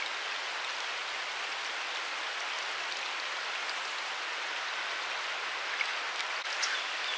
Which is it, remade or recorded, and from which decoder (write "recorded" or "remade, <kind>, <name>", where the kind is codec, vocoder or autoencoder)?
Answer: recorded